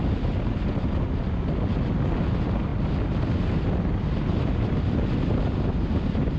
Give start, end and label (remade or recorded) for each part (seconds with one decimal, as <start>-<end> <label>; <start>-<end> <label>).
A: 0.0-6.4 recorded